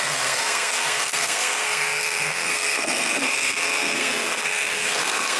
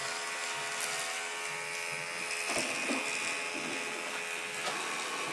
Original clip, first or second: second